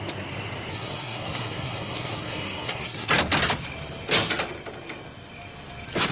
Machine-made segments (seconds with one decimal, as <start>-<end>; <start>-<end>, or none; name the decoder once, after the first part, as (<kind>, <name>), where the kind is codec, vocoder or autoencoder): 0.7-3.1 (codec, SNAC)